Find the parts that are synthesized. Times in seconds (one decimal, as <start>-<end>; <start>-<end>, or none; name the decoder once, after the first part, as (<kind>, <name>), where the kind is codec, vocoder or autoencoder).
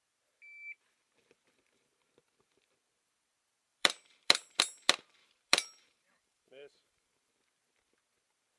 3.7-4.6 (vocoder, BigVGAN v2); 5.2-7.3